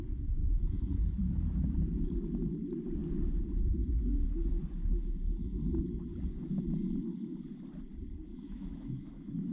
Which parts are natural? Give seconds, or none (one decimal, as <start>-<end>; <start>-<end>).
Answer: 0.0-0.4; 1.3-8.3